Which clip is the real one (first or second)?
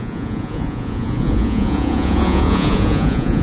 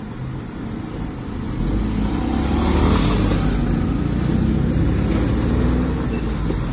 second